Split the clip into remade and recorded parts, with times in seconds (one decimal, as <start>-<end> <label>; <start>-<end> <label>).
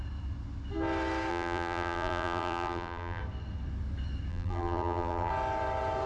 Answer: 0.0-1.3 recorded; 1.3-3.2 remade; 3.2-4.3 recorded; 4.3-5.3 remade; 5.3-6.1 recorded